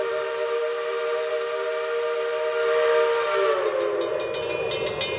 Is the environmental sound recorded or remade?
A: recorded